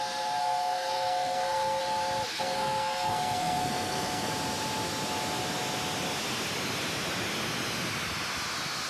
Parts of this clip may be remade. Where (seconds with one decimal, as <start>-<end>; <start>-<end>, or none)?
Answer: 0.4-1.8; 2.3-4.3